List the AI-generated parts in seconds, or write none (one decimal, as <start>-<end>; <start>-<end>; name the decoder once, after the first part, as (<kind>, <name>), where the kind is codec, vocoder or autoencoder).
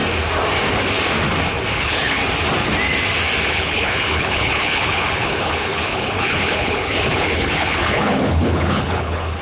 1.7-2.2 (codec, HILCodec); 3.4-9.4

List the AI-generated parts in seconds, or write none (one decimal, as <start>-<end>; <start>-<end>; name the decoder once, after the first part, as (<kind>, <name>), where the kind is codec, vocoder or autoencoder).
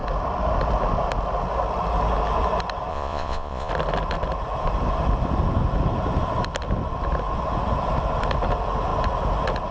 2.9-3.7 (vocoder, Vocos)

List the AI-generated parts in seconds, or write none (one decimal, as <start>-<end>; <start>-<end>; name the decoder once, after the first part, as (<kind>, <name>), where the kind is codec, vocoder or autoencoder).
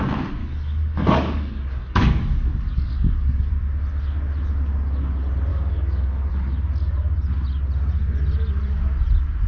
0.4-3.5 (codec, DAC); 5.5-6.3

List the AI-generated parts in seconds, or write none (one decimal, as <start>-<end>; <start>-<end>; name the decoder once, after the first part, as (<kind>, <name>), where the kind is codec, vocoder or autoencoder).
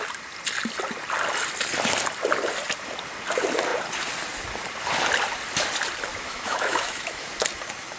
6.1-7.3 (autoencoder, DAC-VAE)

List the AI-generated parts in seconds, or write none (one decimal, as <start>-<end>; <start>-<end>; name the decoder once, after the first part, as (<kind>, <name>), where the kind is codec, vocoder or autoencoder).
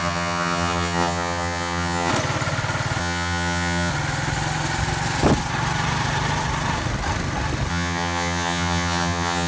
0.0-2.1 (vocoder, HiFi-GAN); 3.0-3.9; 7.7-9.5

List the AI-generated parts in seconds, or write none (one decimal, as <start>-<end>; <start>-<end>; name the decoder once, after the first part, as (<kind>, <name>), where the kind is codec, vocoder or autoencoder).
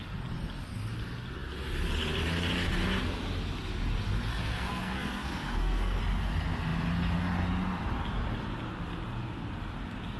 4.3-6.0 (codec, SNAC)